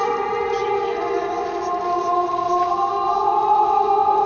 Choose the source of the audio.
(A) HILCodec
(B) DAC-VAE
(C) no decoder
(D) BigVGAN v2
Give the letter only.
C